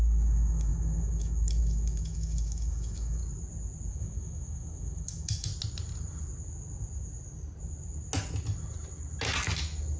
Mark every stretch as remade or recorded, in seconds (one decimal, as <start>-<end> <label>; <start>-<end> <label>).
0.0-3.2 remade; 3.2-3.9 recorded; 3.9-5.5 remade; 5.5-10.0 recorded